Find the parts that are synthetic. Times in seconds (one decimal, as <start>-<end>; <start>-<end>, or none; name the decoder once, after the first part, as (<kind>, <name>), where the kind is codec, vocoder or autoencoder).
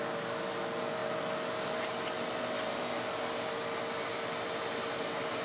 none